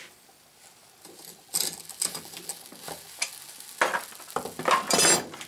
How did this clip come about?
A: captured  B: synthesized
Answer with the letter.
A